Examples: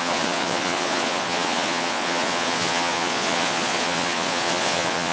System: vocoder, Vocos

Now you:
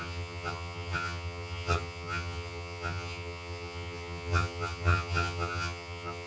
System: vocoder, HiFi-GAN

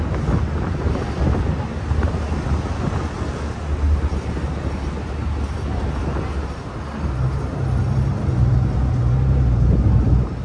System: none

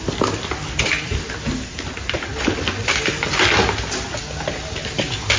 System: none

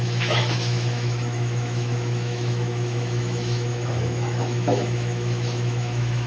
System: autoencoder, DAC-VAE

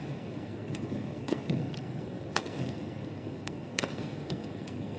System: codec, SNAC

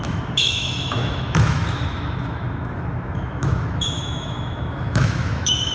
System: autoencoder, DAC-VAE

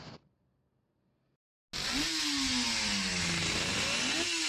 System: none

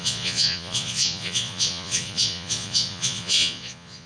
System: vocoder, Vocos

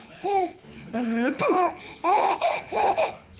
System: codec, HILCodec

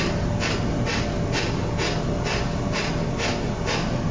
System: none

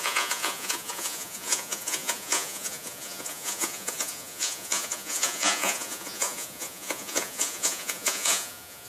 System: vocoder, Vocos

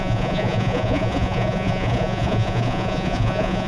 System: vocoder, Vocos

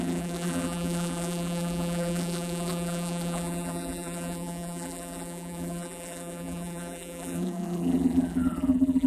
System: vocoder, BigVGAN v2